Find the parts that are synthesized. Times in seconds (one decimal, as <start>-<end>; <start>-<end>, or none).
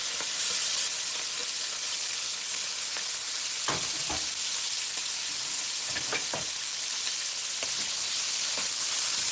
none